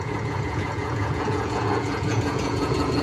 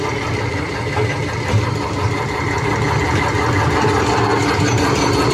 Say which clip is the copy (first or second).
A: first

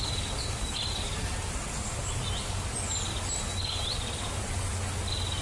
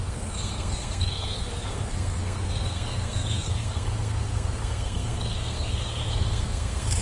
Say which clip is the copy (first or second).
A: second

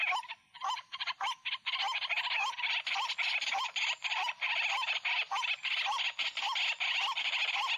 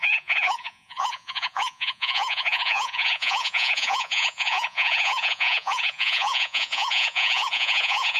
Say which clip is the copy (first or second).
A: second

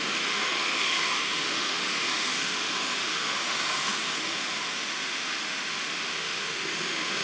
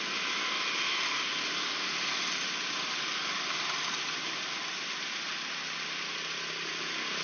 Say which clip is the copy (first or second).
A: first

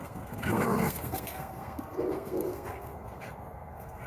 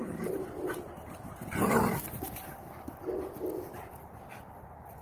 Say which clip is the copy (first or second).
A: first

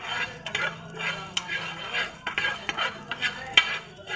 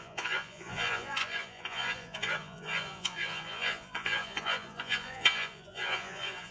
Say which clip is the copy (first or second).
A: second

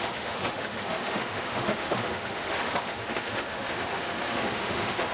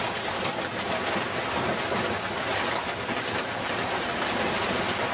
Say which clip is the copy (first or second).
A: first